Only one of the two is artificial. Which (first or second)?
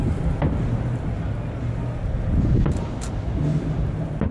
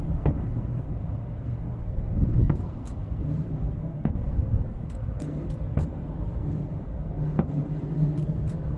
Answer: second